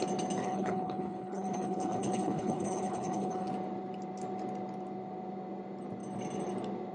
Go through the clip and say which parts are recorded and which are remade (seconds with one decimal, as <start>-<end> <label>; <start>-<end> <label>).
0.0-0.4 recorded; 0.4-3.5 remade; 3.5-6.9 recorded